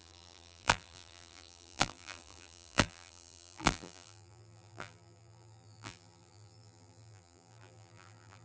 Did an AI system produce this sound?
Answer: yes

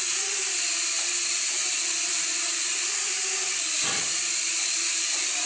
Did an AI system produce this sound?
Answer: yes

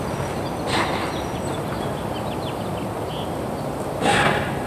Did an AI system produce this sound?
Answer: yes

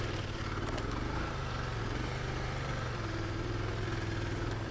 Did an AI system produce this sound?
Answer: yes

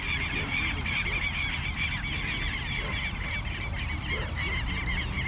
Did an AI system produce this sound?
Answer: no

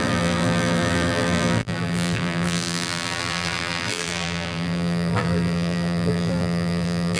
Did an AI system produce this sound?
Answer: yes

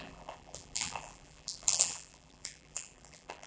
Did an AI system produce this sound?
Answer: yes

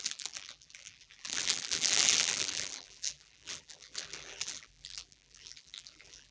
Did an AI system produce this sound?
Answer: yes